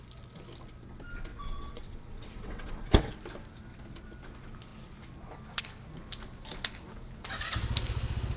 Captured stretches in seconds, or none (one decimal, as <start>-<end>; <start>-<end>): 0.0-1.3; 3.1-8.4